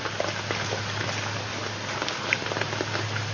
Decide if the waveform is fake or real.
real